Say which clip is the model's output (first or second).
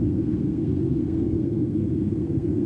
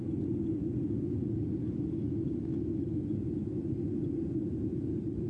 first